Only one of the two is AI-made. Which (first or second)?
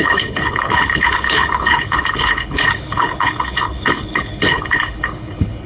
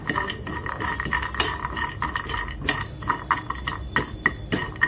first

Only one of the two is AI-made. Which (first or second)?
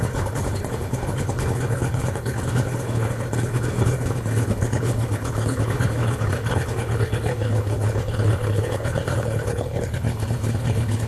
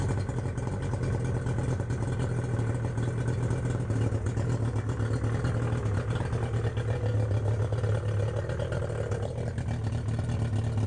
first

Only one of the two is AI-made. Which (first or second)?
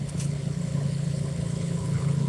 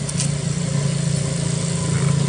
first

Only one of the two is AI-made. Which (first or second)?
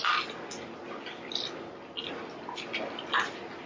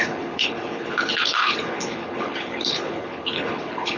second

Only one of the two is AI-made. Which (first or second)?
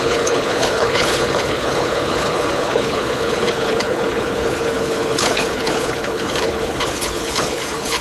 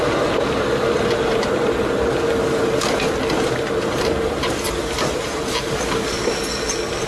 first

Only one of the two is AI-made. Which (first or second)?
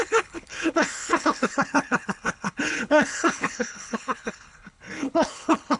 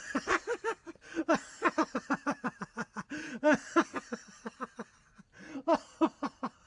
first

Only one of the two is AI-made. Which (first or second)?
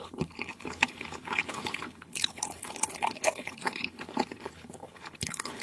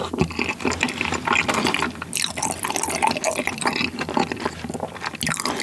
first